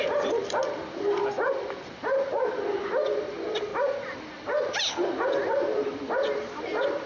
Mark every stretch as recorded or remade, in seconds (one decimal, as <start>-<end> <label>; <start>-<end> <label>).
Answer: 0.0-0.6 remade; 0.6-2.8 recorded; 2.8-3.7 remade; 3.7-4.3 recorded; 4.3-7.1 remade